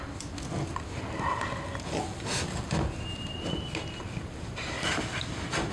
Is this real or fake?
real